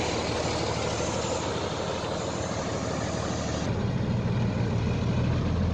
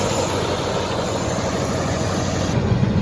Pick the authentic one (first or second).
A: first